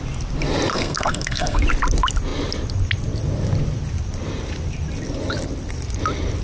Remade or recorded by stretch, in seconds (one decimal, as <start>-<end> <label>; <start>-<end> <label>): 0.0-0.7 recorded; 0.7-1.6 remade; 1.6-6.4 recorded